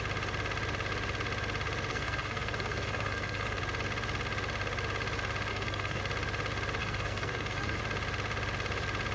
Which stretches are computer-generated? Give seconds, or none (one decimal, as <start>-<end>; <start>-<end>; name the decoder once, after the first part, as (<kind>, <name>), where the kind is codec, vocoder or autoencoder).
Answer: 1.9-3.6 (codec, SNAC); 5.5-6.0; 6.8-7.8